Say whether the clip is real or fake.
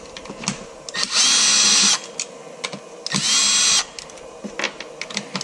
real